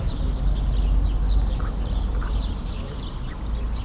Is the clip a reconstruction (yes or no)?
no